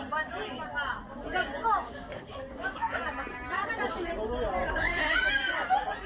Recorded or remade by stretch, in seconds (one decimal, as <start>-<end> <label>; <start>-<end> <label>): 0.0-1.7 recorded; 1.7-2.8 remade; 2.8-4.6 recorded; 4.6-5.3 remade; 5.3-6.1 recorded